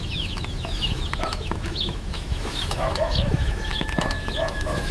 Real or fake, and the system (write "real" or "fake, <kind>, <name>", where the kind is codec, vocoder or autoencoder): fake, autoencoder, DAC-VAE